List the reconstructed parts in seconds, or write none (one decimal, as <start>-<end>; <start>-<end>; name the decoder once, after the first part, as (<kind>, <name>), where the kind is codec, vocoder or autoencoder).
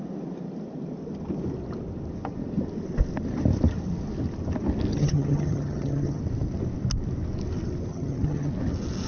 4.9-6.2 (vocoder, HiFi-GAN); 7.9-8.5